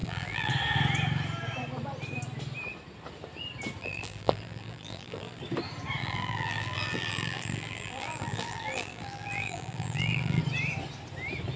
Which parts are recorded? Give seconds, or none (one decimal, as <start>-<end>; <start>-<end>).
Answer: 0.5-3.8; 5.4-6.0; 10.4-11.6